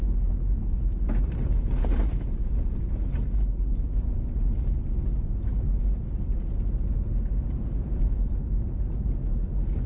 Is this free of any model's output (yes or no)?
yes